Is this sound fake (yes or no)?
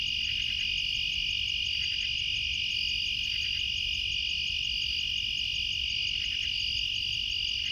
no